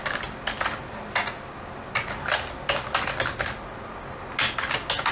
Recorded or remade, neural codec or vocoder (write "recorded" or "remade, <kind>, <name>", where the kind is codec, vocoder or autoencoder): recorded